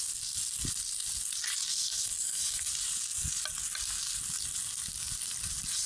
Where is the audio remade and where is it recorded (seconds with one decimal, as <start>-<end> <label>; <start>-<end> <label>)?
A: 0.0-1.7 recorded; 1.7-2.7 remade; 2.7-5.9 recorded